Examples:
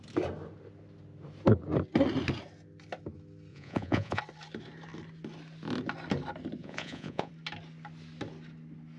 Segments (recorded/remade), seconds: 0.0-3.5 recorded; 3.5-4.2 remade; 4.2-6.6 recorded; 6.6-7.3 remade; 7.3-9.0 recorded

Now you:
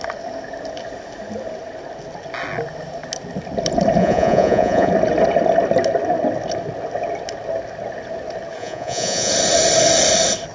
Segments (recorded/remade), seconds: 0.0-4.0 recorded; 4.0-4.9 remade; 4.9-8.6 recorded; 8.6-9.3 remade; 9.3-10.5 recorded

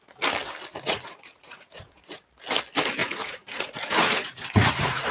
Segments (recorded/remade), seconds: 0.0-0.7 recorded; 0.7-2.2 remade; 2.2-3.0 recorded; 3.0-5.1 remade

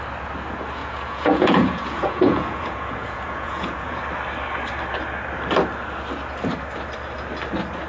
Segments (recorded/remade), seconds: 0.0-0.8 recorded; 0.8-4.0 remade; 4.0-7.9 recorded

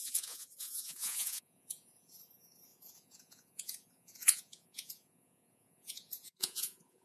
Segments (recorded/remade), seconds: 0.0-7.0 remade

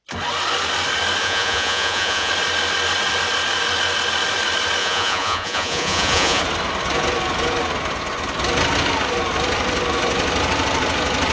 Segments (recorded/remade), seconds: 0.0-1.2 recorded; 1.2-2.3 remade; 2.3-4.8 recorded; 4.8-6.4 remade; 6.4-11.3 recorded